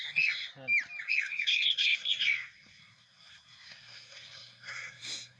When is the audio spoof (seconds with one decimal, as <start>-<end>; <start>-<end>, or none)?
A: 0.0-0.5; 1.0-5.4